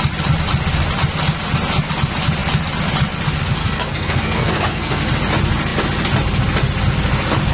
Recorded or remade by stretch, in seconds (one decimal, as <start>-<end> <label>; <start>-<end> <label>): 0.0-3.6 recorded; 3.6-5.0 remade; 5.0-7.5 recorded

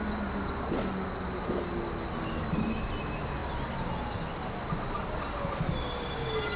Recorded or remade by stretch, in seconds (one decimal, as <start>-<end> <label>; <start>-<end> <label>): 0.0-6.6 recorded

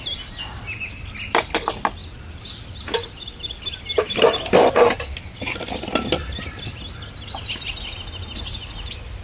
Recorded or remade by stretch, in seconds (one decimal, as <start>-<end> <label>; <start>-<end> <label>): 0.0-9.2 recorded

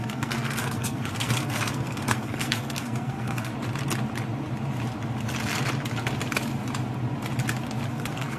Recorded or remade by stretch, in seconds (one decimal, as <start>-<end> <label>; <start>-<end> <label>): 0.0-3.5 remade; 3.5-7.9 recorded; 7.9-8.4 remade

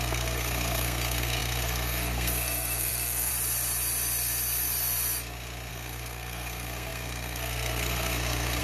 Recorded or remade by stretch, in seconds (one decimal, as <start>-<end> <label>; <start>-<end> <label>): 0.0-3.3 remade; 3.3-5.7 recorded; 5.7-8.6 remade